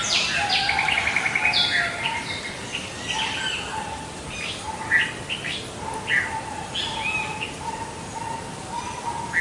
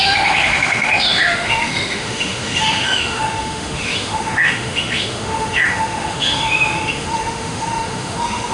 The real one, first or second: first